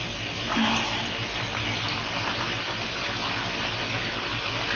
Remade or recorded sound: recorded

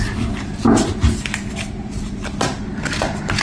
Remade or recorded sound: recorded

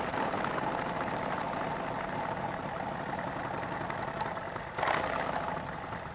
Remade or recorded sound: recorded